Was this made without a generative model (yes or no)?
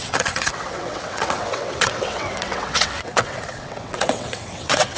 no